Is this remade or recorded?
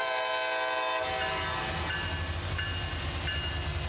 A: recorded